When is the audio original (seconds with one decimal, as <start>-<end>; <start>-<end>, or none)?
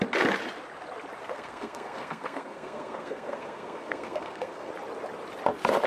0.0-1.2; 4.7-5.9